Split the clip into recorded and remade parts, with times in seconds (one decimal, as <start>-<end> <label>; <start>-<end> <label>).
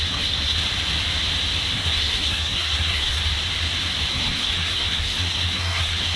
0.0-0.6 remade; 0.6-1.7 recorded; 1.7-3.2 remade; 3.2-4.1 recorded; 4.1-6.2 remade